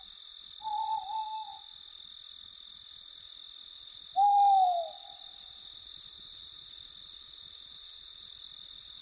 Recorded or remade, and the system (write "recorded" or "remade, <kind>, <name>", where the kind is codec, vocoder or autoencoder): recorded